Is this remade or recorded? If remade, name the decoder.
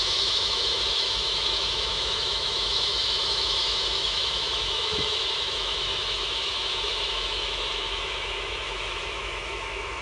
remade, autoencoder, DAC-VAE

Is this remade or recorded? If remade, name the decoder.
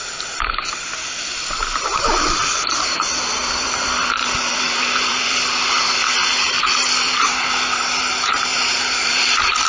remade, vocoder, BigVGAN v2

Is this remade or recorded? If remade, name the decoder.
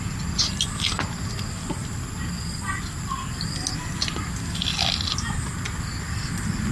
recorded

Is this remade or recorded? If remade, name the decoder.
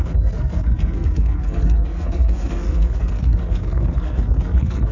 remade, codec, SNAC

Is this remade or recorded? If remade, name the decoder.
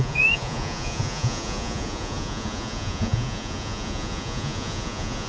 remade, vocoder, Vocos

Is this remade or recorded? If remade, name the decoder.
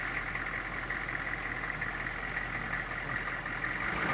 recorded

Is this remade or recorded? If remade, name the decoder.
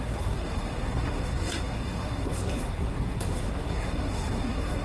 remade, codec, SNAC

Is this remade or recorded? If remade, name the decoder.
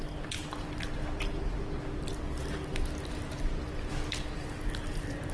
recorded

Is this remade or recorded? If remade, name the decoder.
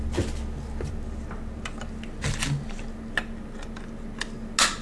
recorded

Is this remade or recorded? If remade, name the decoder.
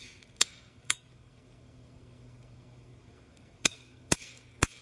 remade, codec, SNAC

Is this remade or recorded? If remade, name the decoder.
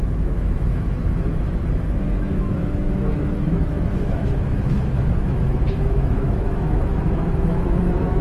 remade, autoencoder, DAC-VAE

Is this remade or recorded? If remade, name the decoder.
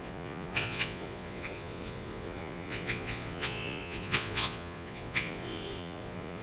remade, vocoder, Vocos